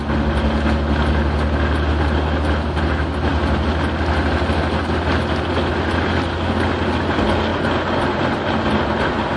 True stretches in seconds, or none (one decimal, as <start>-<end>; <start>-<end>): 0.0-7.5; 9.0-9.4